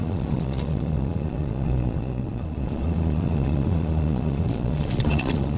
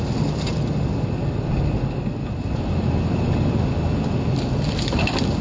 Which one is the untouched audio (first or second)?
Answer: second